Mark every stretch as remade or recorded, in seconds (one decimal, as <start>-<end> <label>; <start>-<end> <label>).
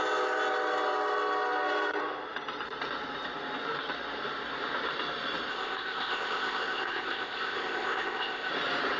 0.0-5.5 recorded; 5.5-8.5 remade; 8.5-9.0 recorded